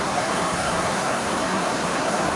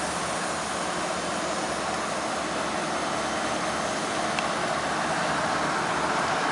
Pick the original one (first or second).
second